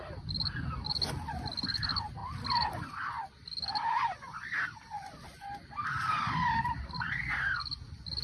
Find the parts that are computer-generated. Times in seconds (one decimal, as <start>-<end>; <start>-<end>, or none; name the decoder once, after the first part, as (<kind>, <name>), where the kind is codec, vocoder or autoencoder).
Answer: none